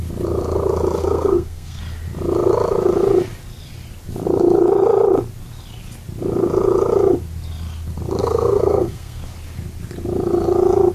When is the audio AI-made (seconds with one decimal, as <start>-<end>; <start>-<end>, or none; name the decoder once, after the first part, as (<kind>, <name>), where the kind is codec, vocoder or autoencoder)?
1.0-1.8 (codec, SNAC); 8.2-9.2